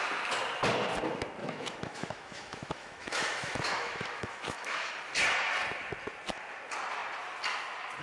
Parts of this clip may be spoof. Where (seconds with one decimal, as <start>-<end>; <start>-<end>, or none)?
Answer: 1.4-4.9